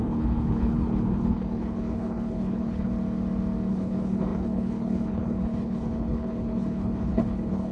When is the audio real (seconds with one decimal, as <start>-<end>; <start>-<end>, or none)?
2.9-3.7